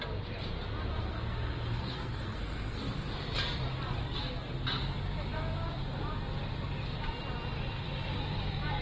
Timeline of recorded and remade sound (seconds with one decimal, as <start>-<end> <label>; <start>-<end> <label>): 0.0-1.0 recorded; 1.0-2.8 remade; 2.8-8.8 recorded